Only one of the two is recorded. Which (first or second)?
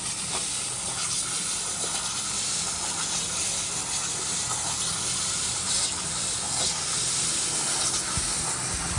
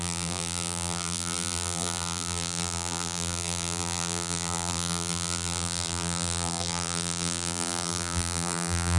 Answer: first